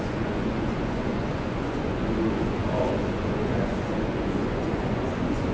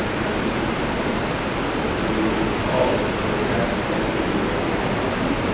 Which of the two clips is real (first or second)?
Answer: second